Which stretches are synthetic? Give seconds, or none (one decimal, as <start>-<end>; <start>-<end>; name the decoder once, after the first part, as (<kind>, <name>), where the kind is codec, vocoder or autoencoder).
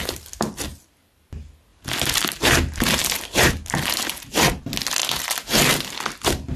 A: 1.7-4.5 (vocoder, BigVGAN v2)